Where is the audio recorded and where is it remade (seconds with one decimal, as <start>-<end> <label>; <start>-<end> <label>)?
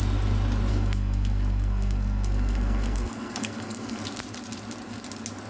0.0-0.7 recorded; 0.7-4.0 remade; 4.0-5.5 recorded